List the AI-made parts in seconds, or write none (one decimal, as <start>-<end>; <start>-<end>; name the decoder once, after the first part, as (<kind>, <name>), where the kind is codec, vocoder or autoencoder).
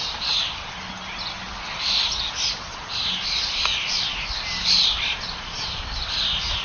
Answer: none